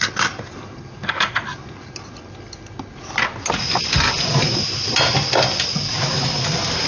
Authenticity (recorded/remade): recorded